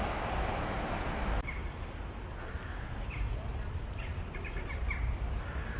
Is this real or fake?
real